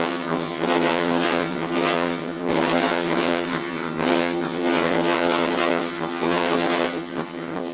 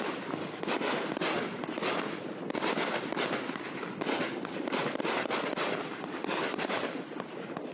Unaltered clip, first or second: second